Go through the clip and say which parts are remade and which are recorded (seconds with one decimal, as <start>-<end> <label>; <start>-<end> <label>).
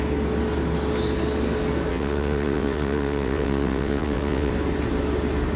0.0-1.9 recorded; 1.9-4.5 remade; 4.5-5.6 recorded